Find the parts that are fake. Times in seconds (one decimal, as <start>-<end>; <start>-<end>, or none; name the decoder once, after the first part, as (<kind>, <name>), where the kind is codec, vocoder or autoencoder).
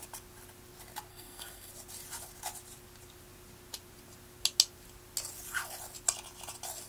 1.1-1.7 (codec, SNAC)